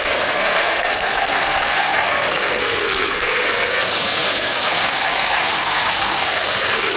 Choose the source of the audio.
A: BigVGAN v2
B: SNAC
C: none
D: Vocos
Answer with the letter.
B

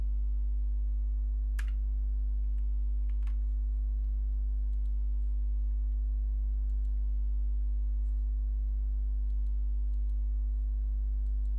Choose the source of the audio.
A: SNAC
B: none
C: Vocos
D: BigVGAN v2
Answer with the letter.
B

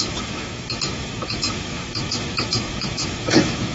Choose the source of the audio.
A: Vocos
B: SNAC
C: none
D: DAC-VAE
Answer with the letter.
D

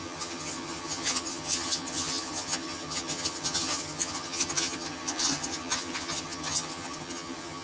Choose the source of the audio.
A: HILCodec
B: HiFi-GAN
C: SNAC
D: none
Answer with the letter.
B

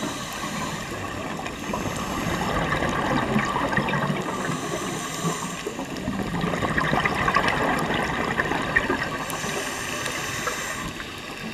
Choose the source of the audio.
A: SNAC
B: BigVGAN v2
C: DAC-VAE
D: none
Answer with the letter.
D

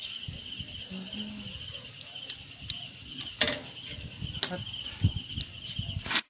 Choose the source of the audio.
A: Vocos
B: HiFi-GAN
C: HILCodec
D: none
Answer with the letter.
D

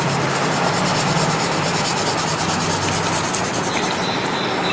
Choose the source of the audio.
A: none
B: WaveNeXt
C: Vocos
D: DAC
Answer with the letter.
A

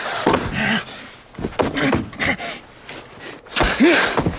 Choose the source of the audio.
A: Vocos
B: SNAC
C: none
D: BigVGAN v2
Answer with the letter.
C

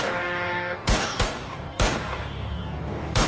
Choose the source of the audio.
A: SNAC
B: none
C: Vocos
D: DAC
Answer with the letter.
D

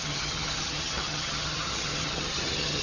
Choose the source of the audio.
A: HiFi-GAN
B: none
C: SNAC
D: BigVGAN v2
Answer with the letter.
A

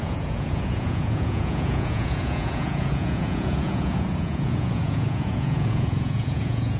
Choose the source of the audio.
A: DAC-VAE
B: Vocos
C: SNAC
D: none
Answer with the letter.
B